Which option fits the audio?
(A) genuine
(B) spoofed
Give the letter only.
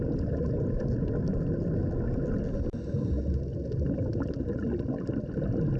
A